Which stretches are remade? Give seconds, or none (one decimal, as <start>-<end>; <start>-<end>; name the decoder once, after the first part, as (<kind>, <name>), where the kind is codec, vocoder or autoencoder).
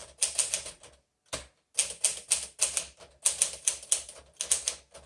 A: none